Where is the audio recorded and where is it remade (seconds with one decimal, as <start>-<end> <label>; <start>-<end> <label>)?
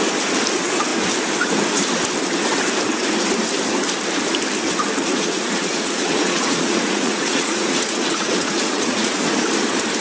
0.0-5.0 recorded; 5.0-9.2 remade; 9.2-10.0 recorded